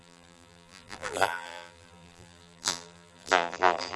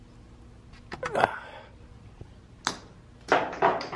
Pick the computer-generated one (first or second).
first